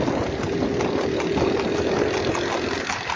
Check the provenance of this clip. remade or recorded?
recorded